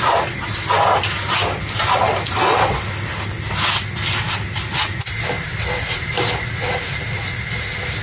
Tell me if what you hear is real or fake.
real